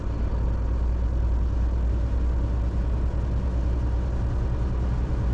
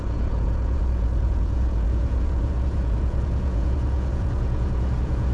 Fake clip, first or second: second